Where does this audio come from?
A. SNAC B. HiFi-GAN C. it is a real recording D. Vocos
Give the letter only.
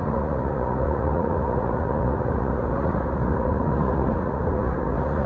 D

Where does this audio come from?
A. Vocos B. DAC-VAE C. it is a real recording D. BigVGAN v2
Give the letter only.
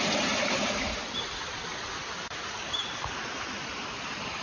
C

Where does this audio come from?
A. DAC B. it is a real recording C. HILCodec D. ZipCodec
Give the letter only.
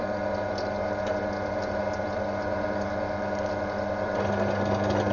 B